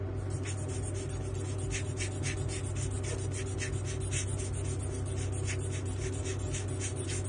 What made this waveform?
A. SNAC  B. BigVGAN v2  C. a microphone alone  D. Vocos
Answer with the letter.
C